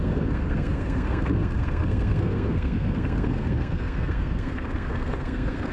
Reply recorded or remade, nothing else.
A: remade